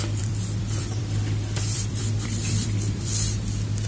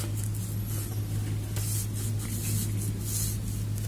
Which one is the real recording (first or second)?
second